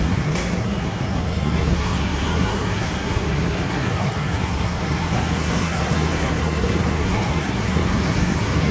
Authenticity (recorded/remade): remade